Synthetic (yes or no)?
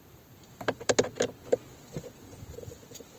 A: no